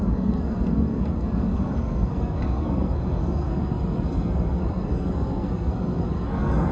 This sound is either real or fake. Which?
fake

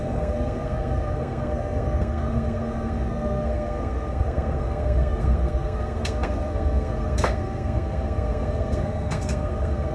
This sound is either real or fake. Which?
fake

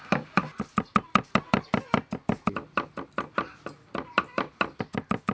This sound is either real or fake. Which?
real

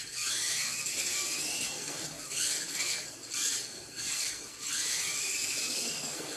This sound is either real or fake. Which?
fake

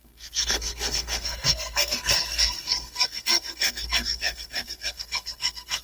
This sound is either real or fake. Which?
fake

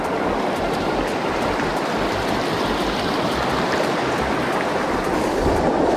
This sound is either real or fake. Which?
real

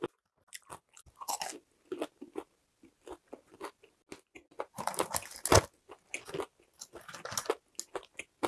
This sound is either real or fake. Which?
real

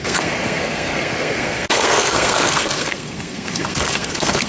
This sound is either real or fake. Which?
fake